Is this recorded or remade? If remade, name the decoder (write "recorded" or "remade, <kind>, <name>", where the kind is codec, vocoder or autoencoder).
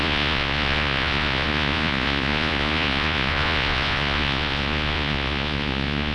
remade, vocoder, Vocos